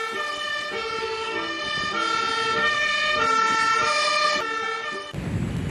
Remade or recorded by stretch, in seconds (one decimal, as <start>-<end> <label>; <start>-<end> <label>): 0.0-1.0 recorded; 1.0-1.6 remade; 1.6-2.6 recorded; 2.6-3.2 remade; 3.2-5.7 recorded